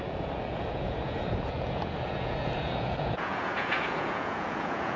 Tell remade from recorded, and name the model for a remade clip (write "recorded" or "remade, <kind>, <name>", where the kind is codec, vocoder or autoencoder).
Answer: remade, vocoder, Vocos